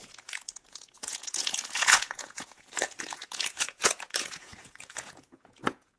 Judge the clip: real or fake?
fake